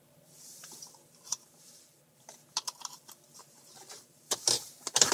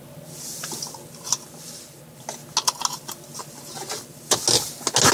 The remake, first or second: first